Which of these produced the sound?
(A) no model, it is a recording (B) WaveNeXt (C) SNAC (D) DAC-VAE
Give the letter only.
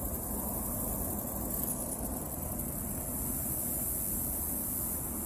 A